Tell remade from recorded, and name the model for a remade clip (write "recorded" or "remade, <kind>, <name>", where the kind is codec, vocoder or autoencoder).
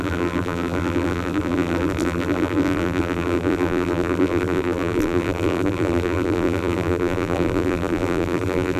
remade, vocoder, BigVGAN v2